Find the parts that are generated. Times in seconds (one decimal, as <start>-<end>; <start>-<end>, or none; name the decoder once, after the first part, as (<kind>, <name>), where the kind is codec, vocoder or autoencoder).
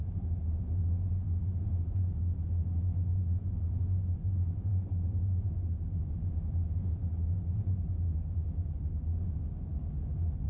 3.1-3.8 (vocoder, Vocos)